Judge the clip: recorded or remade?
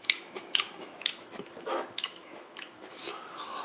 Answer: remade